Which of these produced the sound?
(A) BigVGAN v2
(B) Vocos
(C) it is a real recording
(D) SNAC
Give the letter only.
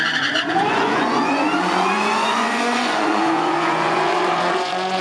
B